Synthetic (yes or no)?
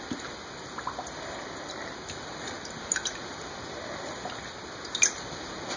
no